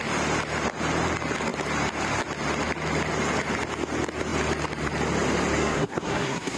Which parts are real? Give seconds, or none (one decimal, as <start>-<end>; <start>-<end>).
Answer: 0.0-5.6